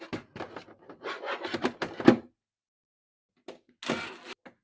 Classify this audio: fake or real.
real